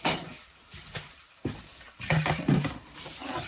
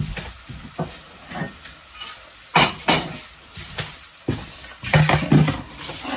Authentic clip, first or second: second